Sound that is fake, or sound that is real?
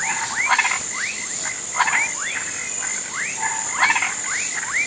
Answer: real